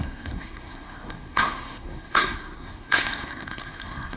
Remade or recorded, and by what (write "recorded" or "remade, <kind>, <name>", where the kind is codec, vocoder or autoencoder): remade, codec, SNAC